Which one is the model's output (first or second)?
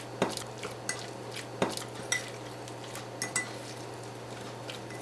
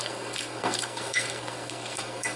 second